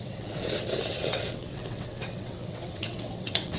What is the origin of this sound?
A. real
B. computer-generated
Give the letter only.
B